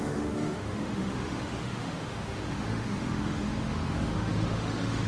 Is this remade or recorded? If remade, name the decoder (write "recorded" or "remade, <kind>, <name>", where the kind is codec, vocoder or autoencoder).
remade, autoencoder, DAC-VAE